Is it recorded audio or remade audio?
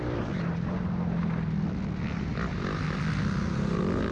recorded